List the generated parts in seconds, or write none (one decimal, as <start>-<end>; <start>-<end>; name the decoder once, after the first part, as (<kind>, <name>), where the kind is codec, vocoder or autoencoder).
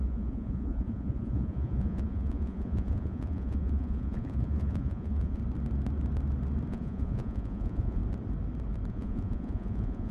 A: 0.0-5.4 (vocoder, Vocos); 6.7-8.0; 8.9-10.1